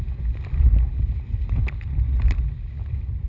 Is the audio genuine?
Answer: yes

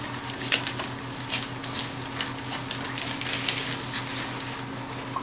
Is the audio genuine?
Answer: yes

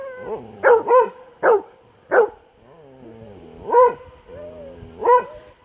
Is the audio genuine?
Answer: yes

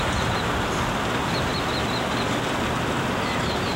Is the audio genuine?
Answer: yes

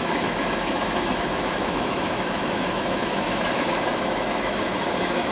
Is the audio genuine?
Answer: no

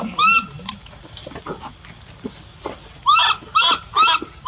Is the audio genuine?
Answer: yes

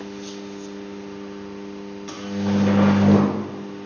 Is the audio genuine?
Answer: yes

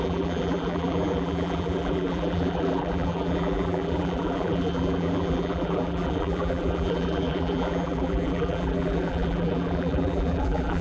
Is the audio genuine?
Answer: no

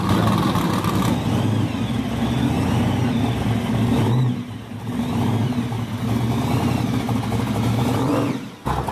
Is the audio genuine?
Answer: yes